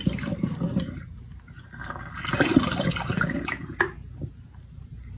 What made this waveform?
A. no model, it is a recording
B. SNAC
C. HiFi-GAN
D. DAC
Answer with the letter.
A